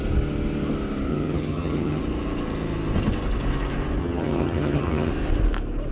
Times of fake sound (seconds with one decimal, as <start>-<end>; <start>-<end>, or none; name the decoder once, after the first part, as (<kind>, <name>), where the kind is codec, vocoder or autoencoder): 1.1-2.0 (vocoder, HiFi-GAN); 4.0-5.1